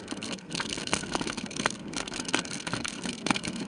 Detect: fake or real fake